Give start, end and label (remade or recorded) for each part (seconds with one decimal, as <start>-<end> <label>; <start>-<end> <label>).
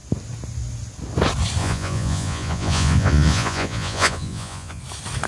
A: 0.0-1.6 recorded; 1.6-4.8 remade; 4.8-5.3 recorded